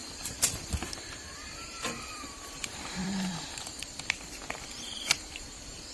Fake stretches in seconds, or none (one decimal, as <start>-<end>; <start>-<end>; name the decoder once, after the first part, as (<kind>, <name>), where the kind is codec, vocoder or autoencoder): 1.5-5.9 (vocoder, BigVGAN v2)